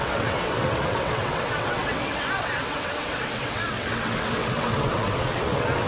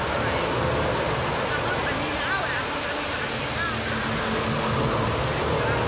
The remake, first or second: first